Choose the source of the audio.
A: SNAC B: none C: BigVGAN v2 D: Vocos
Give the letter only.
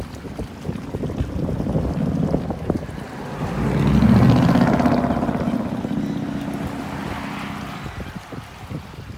B